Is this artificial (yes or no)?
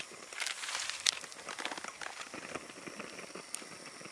no